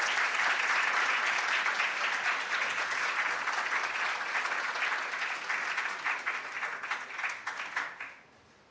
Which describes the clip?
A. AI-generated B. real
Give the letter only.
B